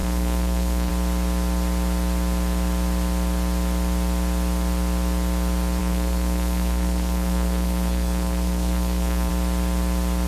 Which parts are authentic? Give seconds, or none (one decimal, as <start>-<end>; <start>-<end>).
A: 0.9-5.8; 9.3-10.3